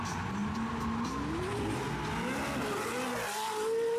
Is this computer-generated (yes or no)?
no